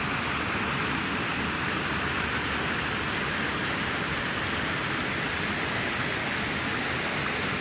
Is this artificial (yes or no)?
no